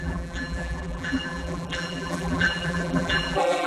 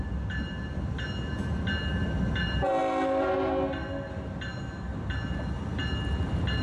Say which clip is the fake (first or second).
first